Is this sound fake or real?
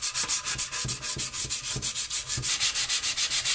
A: real